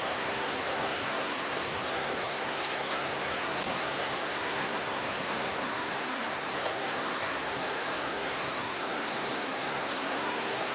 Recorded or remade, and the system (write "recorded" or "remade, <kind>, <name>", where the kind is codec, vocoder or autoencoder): remade, codec, SNAC